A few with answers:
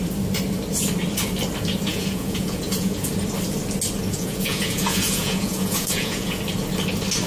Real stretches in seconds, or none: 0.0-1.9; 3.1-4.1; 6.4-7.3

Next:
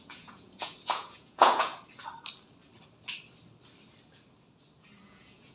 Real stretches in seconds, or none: 1.7-5.0